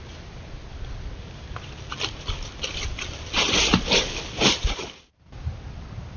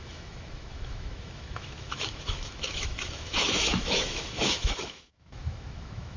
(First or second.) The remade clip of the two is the second